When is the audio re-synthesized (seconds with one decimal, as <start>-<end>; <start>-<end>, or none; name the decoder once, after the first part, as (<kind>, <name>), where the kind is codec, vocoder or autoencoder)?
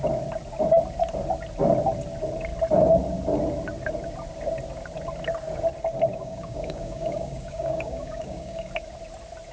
6.1-8.7 (codec, DAC)